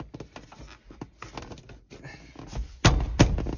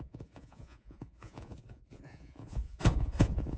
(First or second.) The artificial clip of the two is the second